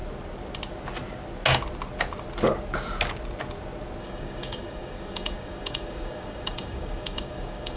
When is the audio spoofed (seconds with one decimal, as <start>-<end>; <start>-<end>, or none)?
4.0-7.8